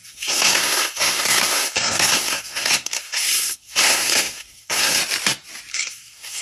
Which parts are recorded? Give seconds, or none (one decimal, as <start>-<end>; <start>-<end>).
5.0-5.7